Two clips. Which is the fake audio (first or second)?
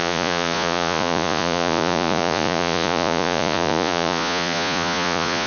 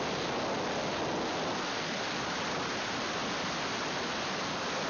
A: first